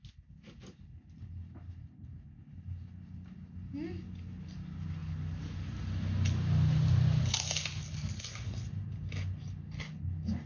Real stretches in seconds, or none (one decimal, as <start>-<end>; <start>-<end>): 0.0-10.5